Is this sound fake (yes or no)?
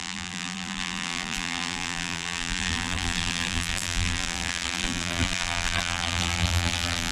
yes